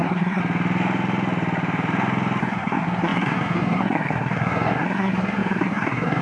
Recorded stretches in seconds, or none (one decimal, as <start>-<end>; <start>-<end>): 0.4-2.4